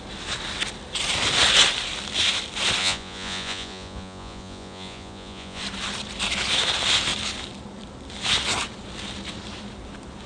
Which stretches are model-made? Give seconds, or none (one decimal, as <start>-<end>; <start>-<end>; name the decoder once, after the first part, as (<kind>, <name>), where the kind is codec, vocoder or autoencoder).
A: 2.8-5.6 (vocoder, Vocos)